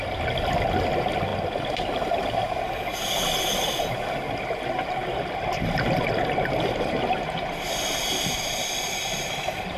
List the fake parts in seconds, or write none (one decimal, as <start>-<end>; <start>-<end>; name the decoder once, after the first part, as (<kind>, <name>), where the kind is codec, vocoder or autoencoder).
none